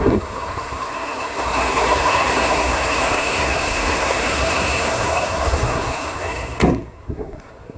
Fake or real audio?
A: fake